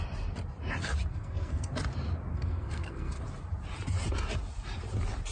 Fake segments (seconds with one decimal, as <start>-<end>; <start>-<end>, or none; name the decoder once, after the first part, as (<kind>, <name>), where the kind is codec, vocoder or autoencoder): 1.1-1.7 (codec, SNAC); 2.3-3.2